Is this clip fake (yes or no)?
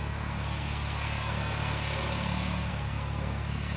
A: yes